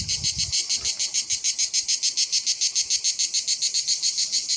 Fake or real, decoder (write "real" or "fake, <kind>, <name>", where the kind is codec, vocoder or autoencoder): real